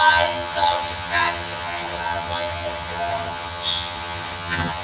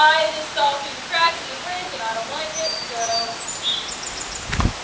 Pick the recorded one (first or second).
second